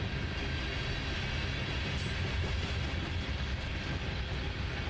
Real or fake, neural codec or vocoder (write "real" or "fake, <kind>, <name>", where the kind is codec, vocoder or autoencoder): real